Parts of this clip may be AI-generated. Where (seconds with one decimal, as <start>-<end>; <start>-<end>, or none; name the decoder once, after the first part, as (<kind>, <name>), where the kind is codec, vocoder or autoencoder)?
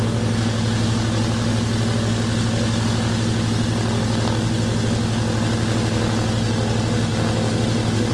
none